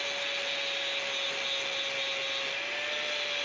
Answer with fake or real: real